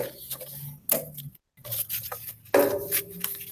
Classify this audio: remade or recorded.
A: recorded